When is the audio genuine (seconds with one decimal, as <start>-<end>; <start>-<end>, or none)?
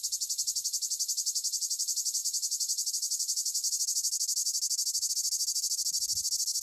0.0-6.6